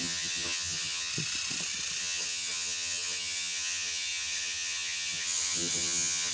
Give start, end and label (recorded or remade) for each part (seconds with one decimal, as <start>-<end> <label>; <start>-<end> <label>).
0.0-1.1 remade; 1.1-2.0 recorded; 2.0-6.3 remade